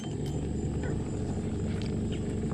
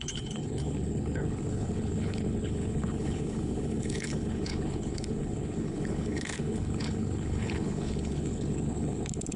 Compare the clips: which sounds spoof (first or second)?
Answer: second